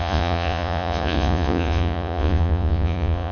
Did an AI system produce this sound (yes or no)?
yes